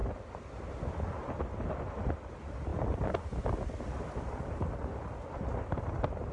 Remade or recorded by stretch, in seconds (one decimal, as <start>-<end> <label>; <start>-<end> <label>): 0.0-6.3 recorded